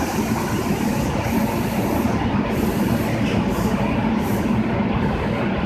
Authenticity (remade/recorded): recorded